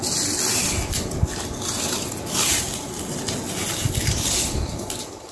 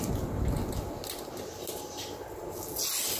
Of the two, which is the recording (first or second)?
second